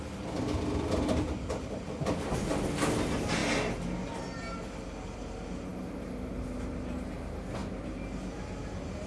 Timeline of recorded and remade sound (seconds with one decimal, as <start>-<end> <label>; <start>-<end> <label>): 0.0-9.1 recorded